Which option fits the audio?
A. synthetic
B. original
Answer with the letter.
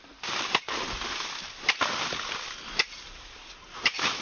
B